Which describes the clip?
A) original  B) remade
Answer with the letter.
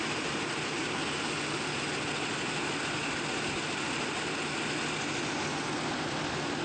A